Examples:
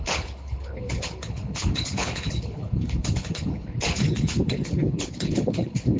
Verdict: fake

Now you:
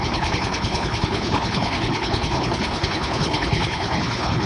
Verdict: fake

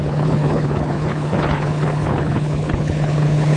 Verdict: fake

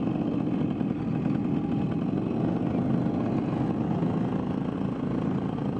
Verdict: real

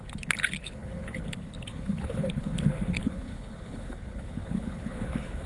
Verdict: fake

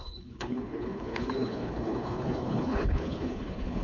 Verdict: fake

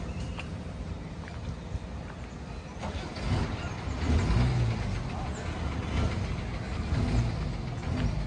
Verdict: real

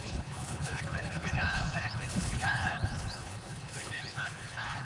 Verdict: fake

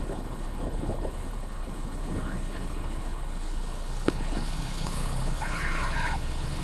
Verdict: fake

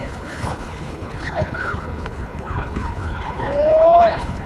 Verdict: fake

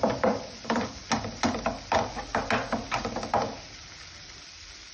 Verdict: real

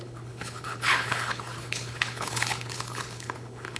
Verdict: fake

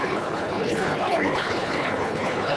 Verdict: fake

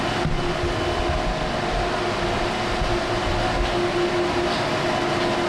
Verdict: real